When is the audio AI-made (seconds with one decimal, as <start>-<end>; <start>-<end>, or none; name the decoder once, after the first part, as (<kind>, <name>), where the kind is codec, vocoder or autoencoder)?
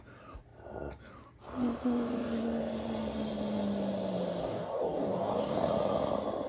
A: 4.4-5.7 (codec, DAC)